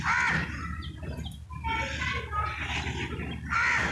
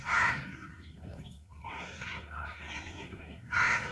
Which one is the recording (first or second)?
first